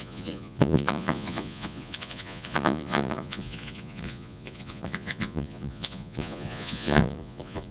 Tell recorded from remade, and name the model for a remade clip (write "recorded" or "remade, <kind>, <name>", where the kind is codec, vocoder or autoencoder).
remade, vocoder, Vocos